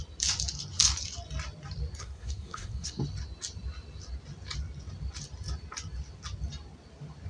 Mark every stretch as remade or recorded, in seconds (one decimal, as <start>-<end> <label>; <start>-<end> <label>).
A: 0.0-2.0 recorded; 2.0-3.0 remade; 3.0-7.3 recorded